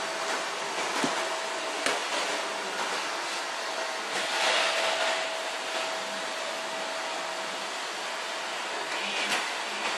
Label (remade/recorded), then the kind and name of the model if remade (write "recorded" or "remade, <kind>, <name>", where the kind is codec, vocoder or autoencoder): recorded